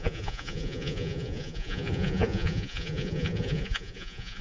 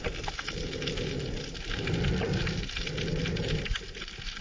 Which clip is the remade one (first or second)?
first